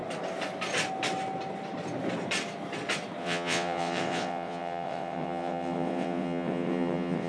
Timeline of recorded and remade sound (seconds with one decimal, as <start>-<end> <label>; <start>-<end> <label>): 0.0-3.2 recorded; 3.2-7.3 remade